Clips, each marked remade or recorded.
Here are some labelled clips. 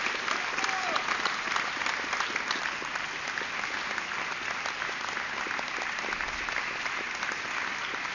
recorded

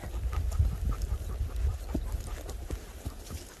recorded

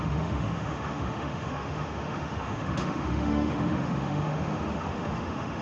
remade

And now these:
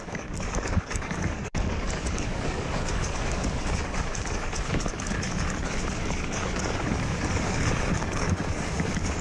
remade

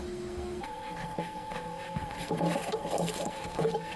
remade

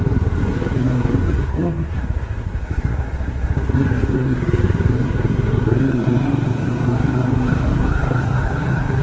remade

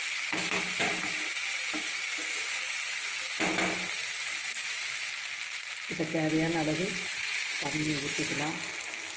recorded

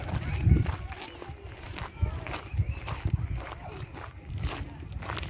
remade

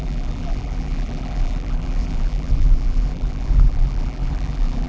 remade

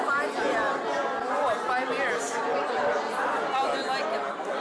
recorded